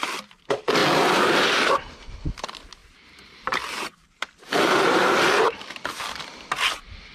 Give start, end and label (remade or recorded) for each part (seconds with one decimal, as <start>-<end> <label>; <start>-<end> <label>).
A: 0.0-2.8 recorded; 2.8-5.8 remade; 5.8-7.1 recorded